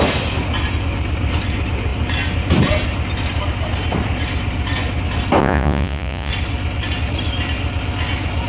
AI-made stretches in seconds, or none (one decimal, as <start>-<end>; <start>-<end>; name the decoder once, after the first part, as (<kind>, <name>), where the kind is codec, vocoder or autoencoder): 5.4-6.3 (vocoder, Vocos)